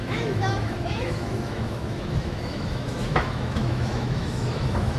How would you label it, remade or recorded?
remade